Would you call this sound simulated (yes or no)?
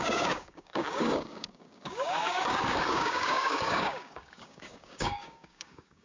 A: yes